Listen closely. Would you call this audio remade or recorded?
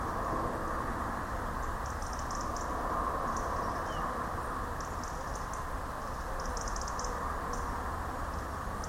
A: recorded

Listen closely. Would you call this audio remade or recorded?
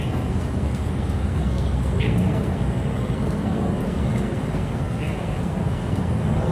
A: remade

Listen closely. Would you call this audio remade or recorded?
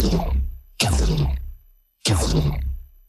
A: remade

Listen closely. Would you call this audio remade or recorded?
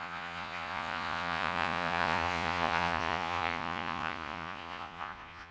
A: remade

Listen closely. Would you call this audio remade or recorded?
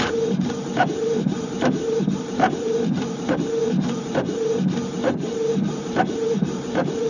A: remade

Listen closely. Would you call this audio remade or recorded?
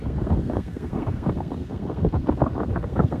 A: remade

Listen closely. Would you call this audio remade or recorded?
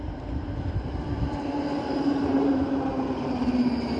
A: remade